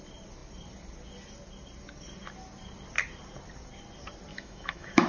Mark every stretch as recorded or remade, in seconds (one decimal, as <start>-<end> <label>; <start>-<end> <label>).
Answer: 0.0-4.3 recorded; 4.3-5.1 remade